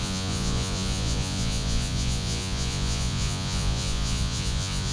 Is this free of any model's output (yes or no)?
no